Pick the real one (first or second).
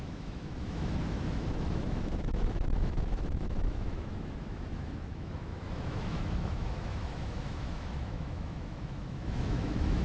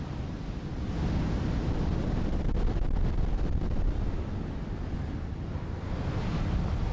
second